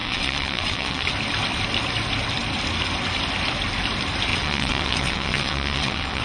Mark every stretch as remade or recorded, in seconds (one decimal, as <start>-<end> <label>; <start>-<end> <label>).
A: 0.0-1.1 remade; 1.1-4.3 recorded; 4.3-6.2 remade